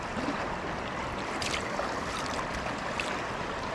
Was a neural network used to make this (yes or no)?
no